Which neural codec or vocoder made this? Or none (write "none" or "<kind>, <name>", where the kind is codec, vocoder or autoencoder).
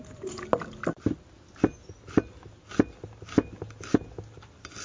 none